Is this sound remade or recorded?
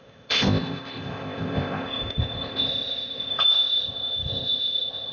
remade